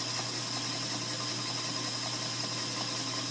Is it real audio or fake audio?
real